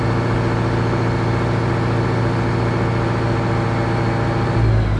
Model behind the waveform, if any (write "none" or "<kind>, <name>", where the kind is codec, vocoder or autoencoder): none